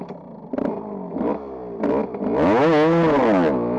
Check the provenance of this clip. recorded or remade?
recorded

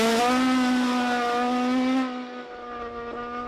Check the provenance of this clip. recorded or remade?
recorded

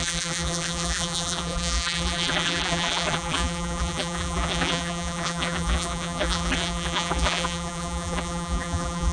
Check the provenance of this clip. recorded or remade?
remade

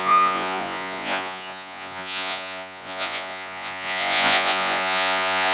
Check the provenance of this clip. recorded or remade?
remade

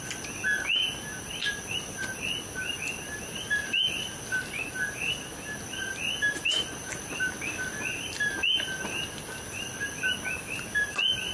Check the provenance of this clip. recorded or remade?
recorded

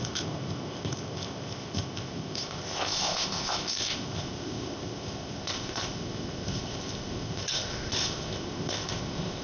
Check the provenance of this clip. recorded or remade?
remade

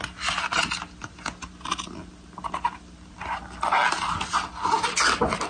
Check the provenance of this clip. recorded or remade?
recorded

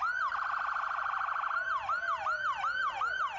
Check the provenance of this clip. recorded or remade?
recorded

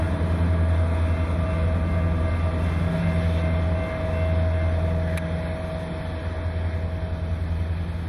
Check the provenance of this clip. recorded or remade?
recorded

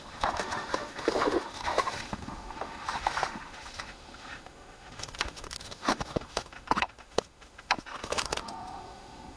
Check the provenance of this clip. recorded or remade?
remade